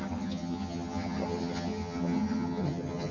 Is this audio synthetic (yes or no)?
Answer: yes